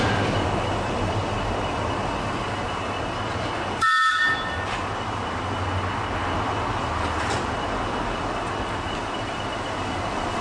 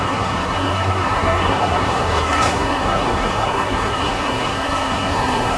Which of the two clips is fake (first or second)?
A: second